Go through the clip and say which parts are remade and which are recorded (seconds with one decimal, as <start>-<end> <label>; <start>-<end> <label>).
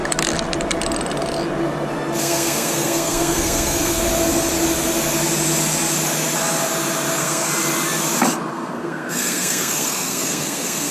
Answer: 0.0-2.2 recorded; 2.2-4.0 remade; 4.0-7.1 recorded; 7.1-7.5 remade; 7.5-8.5 recorded; 8.5-10.9 remade